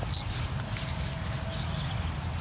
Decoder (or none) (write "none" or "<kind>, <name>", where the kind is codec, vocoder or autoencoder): none